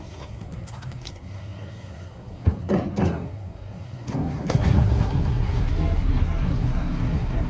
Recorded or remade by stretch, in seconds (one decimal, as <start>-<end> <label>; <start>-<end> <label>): 0.0-7.5 remade

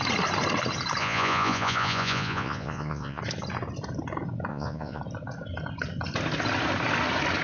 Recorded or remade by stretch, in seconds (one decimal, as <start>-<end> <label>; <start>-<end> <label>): 0.0-1.0 recorded; 1.0-3.2 remade; 3.2-4.5 recorded; 4.5-5.0 remade; 5.0-7.4 recorded

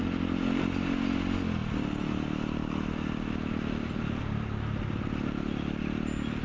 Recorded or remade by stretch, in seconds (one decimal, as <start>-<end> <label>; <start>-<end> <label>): 0.0-6.4 recorded

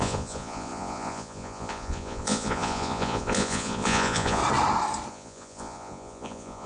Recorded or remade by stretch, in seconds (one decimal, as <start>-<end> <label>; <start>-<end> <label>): 0.0-4.4 remade; 4.4-5.1 recorded; 5.1-6.7 remade